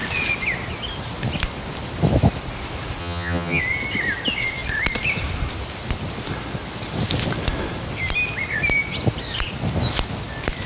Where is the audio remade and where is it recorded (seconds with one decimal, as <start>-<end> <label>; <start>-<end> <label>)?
0.0-3.0 recorded; 3.0-3.6 remade; 3.6-10.7 recorded